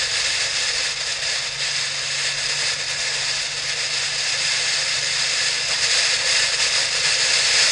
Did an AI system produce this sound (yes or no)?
no